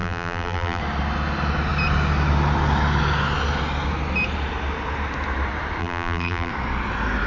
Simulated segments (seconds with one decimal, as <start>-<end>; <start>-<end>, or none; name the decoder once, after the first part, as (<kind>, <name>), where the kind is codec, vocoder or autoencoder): 0.0-0.8 (vocoder, BigVGAN v2); 5.8-6.5